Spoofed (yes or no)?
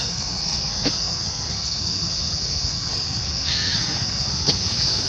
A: yes